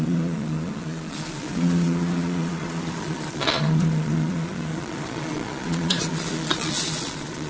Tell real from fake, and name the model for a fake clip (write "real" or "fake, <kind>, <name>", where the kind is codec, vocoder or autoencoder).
fake, vocoder, Vocos